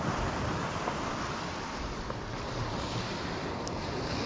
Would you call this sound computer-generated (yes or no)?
no